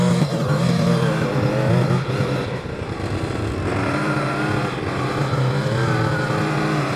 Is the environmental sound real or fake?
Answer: real